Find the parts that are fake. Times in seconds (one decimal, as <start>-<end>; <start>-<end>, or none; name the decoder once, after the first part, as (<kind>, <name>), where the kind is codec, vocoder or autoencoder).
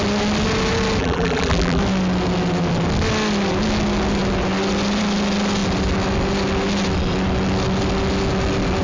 1.0-1.8 (vocoder, BigVGAN v2)